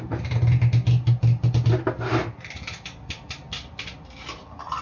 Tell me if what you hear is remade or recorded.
recorded